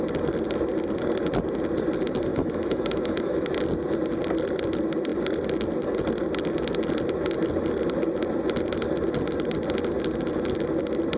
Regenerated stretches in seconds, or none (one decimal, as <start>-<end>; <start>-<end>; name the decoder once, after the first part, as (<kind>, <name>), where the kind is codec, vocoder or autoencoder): 2.3-3.5 (autoencoder, DAC-VAE)